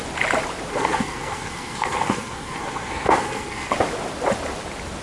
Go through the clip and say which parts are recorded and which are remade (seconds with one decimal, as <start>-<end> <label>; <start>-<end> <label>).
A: 0.0-0.7 recorded; 0.7-3.7 remade; 3.7-5.0 recorded